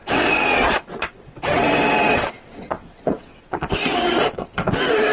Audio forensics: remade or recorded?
remade